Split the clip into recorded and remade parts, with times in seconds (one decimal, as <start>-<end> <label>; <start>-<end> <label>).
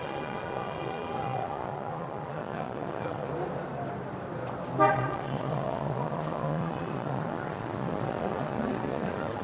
0.0-3.3 remade; 3.3-4.9 recorded; 4.9-9.4 remade